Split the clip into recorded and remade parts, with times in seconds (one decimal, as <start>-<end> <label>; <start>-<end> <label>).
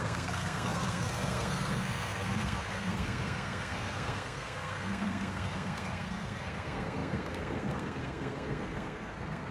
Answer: 0.0-9.5 remade